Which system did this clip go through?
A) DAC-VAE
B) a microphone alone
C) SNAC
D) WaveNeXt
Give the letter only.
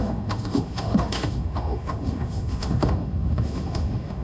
A